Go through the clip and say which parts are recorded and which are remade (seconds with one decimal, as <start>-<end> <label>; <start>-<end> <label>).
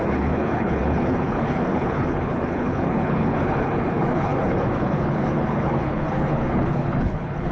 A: 0.0-7.5 remade